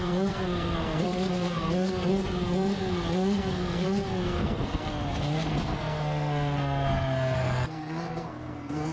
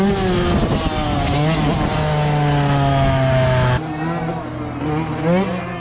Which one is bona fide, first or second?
second